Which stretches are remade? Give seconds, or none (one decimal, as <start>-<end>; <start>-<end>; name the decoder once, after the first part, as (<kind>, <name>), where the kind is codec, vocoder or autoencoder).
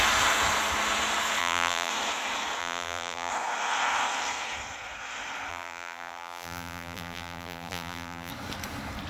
1.4-1.9 (vocoder, BigVGAN v2); 2.6-3.3; 5.5-8.3